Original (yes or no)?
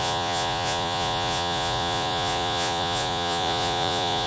no